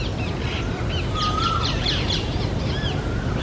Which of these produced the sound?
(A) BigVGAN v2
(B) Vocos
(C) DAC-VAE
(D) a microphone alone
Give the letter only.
D